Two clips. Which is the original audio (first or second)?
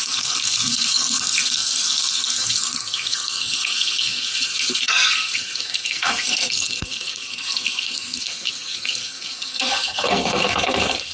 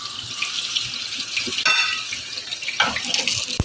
second